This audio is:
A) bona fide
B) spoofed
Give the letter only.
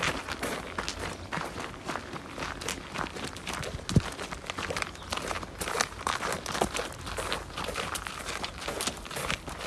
A